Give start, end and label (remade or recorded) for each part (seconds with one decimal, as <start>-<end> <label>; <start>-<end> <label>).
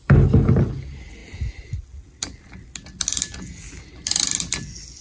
0.0-5.0 recorded